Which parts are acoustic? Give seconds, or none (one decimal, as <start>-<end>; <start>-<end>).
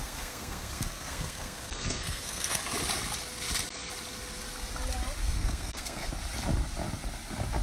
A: 2.6-5.2; 6.1-7.6